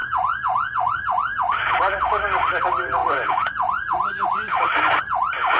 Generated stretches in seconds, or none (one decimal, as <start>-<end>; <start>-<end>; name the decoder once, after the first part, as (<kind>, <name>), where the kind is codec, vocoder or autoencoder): 0.0-5.6 (vocoder, BigVGAN v2)